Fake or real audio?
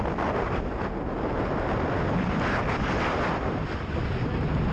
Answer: real